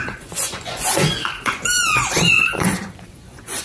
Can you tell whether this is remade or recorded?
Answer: remade